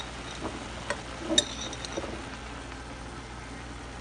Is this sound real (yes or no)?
yes